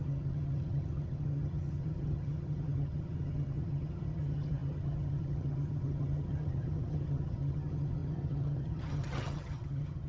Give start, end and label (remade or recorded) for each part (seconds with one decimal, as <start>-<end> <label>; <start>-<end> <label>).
0.0-10.1 remade